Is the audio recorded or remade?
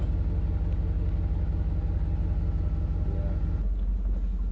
recorded